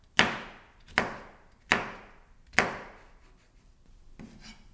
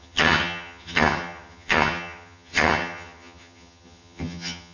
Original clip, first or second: first